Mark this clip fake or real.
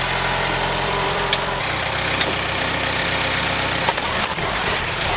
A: fake